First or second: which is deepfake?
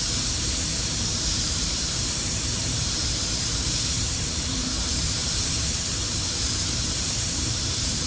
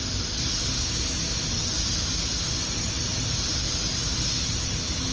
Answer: first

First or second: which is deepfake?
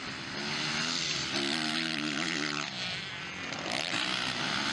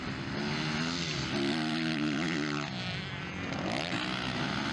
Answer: first